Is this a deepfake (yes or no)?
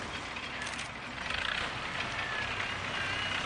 no